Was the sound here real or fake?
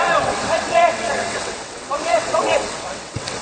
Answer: fake